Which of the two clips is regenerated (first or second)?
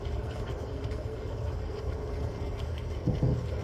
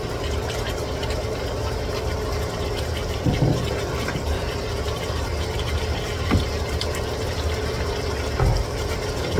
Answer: first